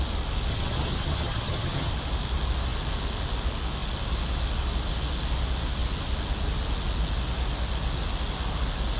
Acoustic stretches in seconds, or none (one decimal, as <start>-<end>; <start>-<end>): 0.0-0.5; 1.9-9.0